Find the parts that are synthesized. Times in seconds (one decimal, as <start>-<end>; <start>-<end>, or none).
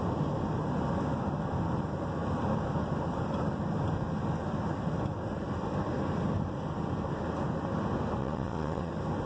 8.2-8.9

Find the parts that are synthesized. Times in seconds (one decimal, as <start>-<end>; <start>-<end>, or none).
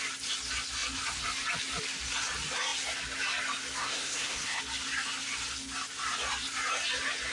3.8-4.6